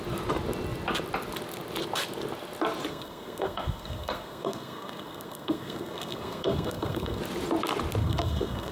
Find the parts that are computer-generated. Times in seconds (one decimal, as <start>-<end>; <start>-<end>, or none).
2.9-7.2; 8.0-8.7